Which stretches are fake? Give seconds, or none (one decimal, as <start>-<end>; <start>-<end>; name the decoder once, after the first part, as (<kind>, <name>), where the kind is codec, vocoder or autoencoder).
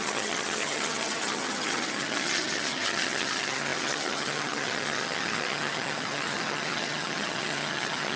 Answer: 0.0-8.2 (vocoder, HiFi-GAN)